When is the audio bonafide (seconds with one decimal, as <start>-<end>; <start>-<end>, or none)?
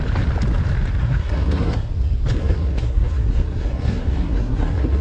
0.0-1.0; 1.9-2.4